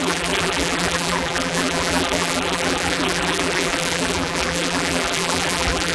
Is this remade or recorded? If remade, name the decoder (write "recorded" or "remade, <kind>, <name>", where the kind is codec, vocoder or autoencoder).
remade, vocoder, BigVGAN v2